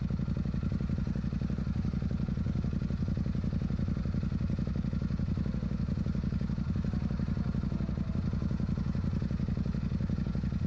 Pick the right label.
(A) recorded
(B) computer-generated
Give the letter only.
A